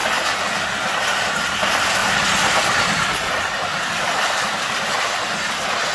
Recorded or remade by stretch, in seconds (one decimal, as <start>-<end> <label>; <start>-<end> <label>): 0.0-2.0 recorded; 2.0-2.9 remade; 2.9-3.7 recorded; 3.7-5.5 remade; 5.5-5.9 recorded

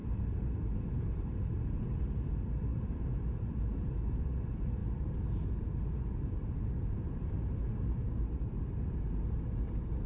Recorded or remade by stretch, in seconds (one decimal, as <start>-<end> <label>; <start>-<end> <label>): 0.0-10.1 remade

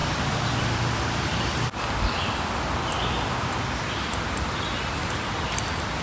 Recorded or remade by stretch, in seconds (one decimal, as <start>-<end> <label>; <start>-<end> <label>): 0.0-6.0 recorded

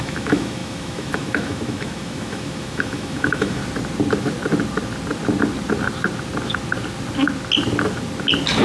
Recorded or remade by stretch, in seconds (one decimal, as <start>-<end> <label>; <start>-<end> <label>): 0.0-3.6 remade; 3.6-8.6 recorded